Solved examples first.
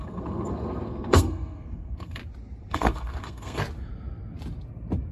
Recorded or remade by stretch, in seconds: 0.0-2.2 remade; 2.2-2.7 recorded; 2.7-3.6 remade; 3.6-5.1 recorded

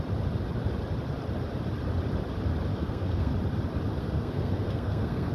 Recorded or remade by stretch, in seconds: 0.0-2.7 recorded; 2.7-3.3 remade; 3.3-4.0 recorded; 4.0-5.3 remade

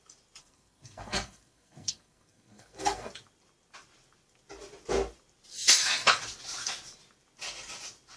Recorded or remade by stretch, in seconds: 0.0-0.4 recorded; 0.4-3.1 remade; 3.1-5.5 recorded; 5.5-6.2 remade; 6.2-8.2 recorded

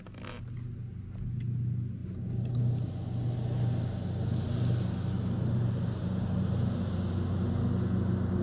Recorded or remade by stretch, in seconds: 0.0-8.4 recorded

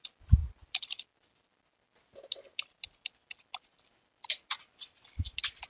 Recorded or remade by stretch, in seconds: 0.0-5.7 recorded

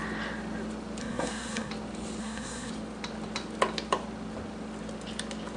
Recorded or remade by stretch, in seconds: 0.0-1.0 recorded; 1.0-1.7 remade; 1.7-2.2 recorded; 2.2-2.7 remade; 2.7-5.6 recorded

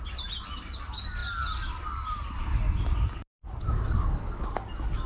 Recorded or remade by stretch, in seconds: 0.0-5.1 recorded